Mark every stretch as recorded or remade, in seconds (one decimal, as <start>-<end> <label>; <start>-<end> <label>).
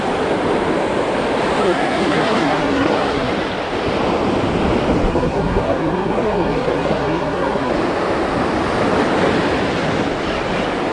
0.0-1.6 recorded; 1.6-3.3 remade; 3.3-5.1 recorded; 5.1-7.7 remade; 7.7-10.9 recorded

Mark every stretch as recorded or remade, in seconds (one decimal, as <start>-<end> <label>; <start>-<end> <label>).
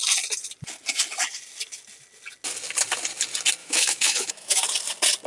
0.0-3.6 recorded; 3.6-4.6 remade; 4.6-5.3 recorded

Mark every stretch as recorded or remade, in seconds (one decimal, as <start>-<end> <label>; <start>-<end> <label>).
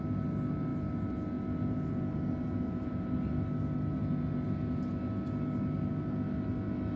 0.0-7.0 recorded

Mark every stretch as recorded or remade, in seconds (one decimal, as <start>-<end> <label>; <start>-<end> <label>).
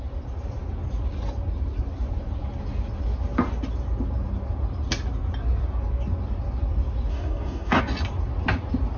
0.0-7.1 recorded; 7.1-7.8 remade; 7.8-9.0 recorded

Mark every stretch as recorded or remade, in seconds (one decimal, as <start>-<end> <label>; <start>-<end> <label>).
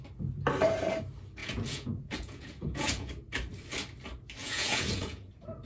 0.0-1.4 recorded; 1.4-3.1 remade; 3.1-4.4 recorded; 4.4-5.3 remade; 5.3-5.7 recorded